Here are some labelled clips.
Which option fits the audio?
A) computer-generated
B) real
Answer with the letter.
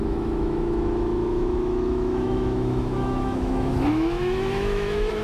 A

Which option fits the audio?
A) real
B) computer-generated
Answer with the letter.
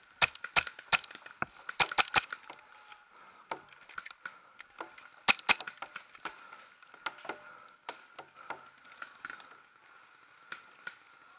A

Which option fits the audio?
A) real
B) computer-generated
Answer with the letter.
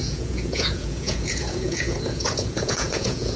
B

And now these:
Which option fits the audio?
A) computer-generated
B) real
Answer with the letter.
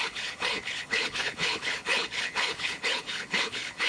A